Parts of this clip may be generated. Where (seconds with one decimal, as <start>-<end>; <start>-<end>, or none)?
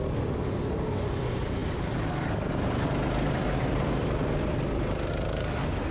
1.6-5.1